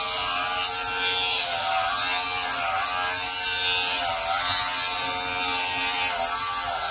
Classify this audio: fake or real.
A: real